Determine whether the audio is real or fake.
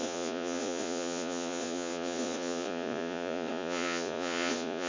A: fake